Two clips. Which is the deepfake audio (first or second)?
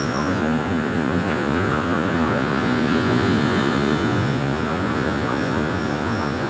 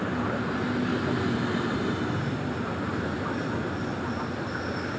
first